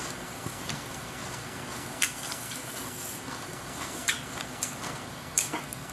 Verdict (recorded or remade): remade